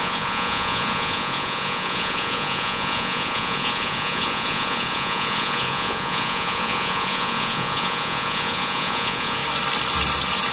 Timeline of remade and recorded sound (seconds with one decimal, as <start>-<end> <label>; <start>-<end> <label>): 0.0-9.4 remade; 9.4-10.5 recorded